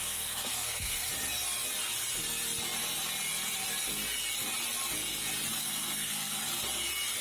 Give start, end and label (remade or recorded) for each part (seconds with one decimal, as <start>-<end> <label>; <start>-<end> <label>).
0.0-1.1 remade; 1.1-5.6 recorded; 5.6-6.4 remade; 6.4-7.2 recorded